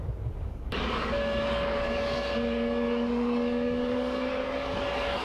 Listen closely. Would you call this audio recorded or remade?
remade